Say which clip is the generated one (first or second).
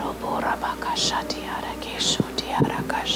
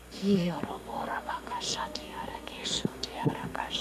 second